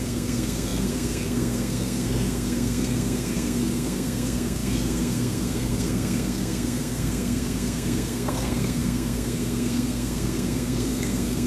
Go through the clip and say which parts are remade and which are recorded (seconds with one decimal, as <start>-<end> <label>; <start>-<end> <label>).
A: 0.0-11.5 remade